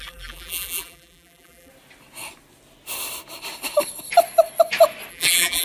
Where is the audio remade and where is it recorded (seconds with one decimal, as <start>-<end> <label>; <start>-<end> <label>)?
0.0-1.7 remade; 1.7-5.1 recorded; 5.1-5.6 remade